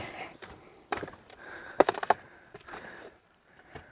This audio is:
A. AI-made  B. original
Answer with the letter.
A